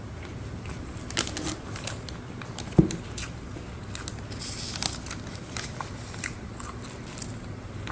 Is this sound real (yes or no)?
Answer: yes